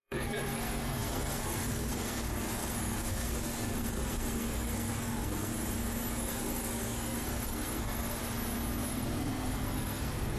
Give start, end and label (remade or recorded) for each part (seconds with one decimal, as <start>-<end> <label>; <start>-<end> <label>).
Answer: 0.0-5.5 remade; 5.5-6.2 recorded; 6.2-8.2 remade; 8.2-8.9 recorded; 8.9-10.4 remade